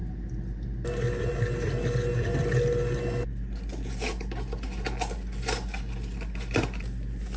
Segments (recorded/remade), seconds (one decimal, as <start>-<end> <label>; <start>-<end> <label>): 0.0-7.4 recorded